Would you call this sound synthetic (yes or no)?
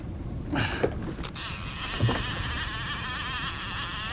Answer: no